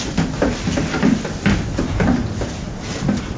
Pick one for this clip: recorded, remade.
recorded